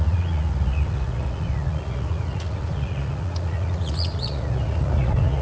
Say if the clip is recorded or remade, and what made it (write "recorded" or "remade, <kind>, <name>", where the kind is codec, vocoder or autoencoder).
remade, vocoder, Vocos